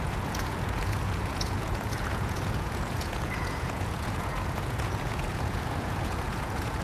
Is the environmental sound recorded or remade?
remade